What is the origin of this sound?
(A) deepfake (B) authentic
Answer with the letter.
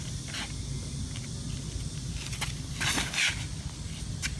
B